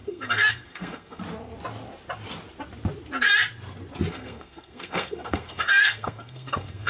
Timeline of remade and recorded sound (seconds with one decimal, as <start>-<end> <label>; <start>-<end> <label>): 0.0-1.2 remade; 1.2-4.1 recorded; 4.1-6.9 remade